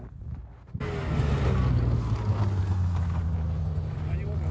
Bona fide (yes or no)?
yes